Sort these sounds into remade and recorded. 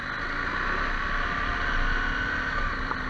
recorded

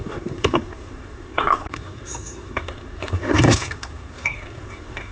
remade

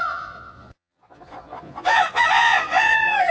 remade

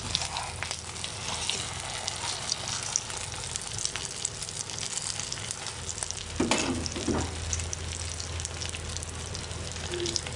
recorded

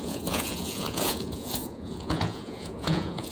remade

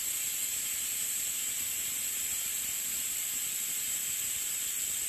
remade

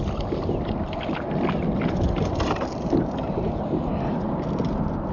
recorded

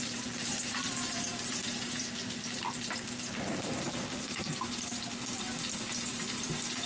remade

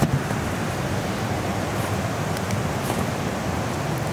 recorded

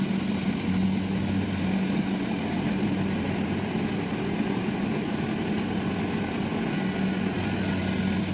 recorded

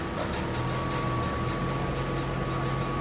recorded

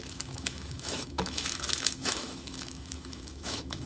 remade